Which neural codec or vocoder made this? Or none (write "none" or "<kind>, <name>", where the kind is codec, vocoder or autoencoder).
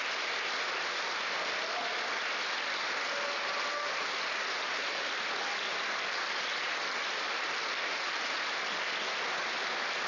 none